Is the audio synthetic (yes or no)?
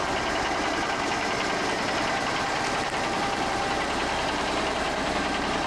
yes